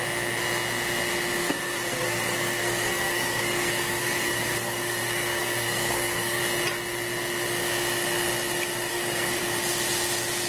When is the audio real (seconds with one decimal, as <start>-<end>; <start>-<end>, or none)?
0.0-1.4; 6.4-8.9; 9.4-10.5